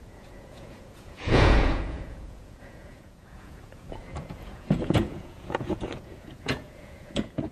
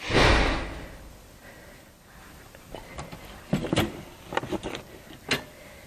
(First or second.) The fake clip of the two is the first